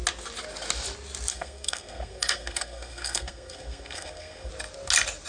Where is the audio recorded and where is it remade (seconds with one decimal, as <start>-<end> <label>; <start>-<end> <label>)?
0.0-1.3 recorded; 1.3-4.5 remade; 4.5-5.3 recorded